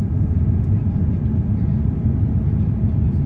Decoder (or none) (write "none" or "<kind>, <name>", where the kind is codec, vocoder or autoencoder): none